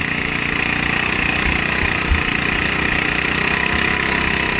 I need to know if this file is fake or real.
real